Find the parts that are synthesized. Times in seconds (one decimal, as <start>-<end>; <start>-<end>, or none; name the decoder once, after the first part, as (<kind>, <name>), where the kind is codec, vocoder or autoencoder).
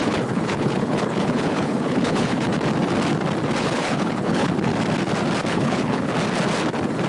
0.0-2.5 (codec, HILCodec); 3.6-4.7; 5.5-6.1